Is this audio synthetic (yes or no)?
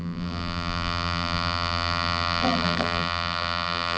yes